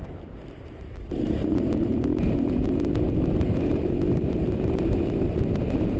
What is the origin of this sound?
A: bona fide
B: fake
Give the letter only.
B